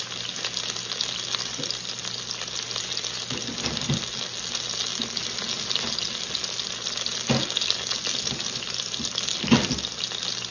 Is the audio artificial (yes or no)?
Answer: no